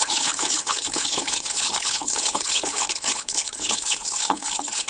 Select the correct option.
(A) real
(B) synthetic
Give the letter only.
B